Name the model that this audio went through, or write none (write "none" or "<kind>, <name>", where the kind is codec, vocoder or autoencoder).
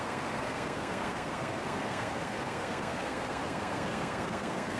codec, SNAC